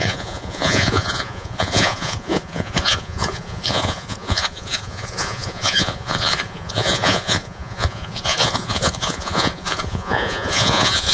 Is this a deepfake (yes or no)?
yes